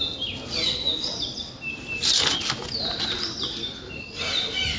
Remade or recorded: recorded